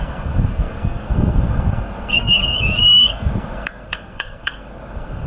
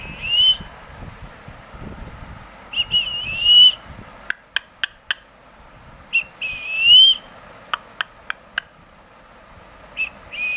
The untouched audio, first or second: second